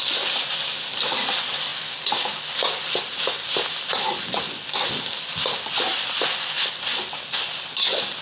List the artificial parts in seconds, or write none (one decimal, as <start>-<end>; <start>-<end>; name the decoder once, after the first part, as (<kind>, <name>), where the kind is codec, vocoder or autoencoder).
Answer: none